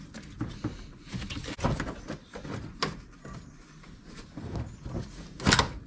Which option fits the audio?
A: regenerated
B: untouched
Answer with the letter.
B